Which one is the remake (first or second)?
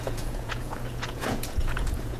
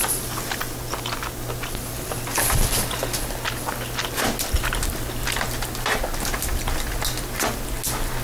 first